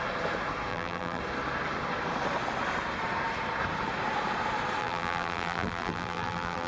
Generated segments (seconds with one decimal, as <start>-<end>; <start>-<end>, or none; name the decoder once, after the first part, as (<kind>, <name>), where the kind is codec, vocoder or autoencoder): 0.7-1.2 (vocoder, BigVGAN v2); 4.8-6.7

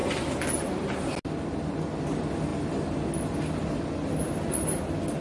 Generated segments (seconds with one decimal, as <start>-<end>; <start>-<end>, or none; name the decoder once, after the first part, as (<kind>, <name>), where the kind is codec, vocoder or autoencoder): none

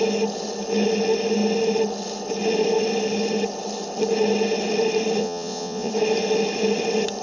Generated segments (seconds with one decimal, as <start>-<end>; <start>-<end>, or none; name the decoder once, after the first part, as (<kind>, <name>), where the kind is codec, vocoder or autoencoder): 5.2-5.9 (vocoder, Vocos)

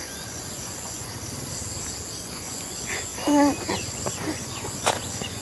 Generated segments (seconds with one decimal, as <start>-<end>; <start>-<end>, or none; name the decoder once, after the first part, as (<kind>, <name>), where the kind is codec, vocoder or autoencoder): 0.0-1.1 (vocoder, Vocos); 2.2-5.4

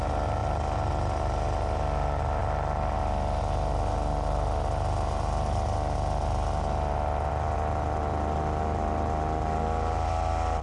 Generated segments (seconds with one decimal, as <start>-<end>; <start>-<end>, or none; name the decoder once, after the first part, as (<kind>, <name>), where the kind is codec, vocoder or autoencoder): none

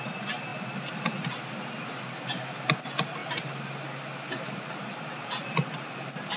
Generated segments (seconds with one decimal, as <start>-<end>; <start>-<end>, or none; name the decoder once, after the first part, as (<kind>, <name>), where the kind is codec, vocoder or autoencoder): none